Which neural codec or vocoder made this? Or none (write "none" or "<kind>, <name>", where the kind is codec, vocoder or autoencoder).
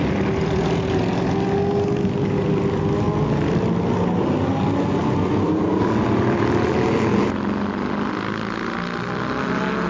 none